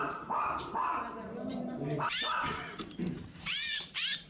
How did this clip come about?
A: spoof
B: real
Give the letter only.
A